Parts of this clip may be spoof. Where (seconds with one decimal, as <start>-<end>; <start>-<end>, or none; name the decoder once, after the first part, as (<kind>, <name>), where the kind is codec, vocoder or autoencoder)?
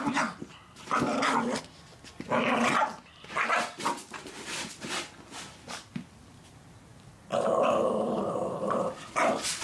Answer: none